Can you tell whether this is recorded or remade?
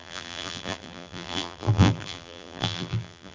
remade